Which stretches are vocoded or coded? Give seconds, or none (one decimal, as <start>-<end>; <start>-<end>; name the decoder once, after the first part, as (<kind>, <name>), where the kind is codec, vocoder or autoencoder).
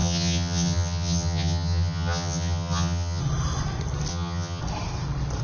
0.0-3.2 (vocoder, HiFi-GAN); 4.1-4.6